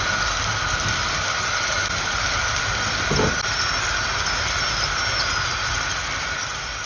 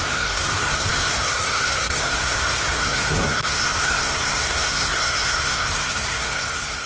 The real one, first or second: first